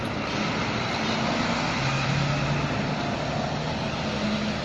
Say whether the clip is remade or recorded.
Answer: recorded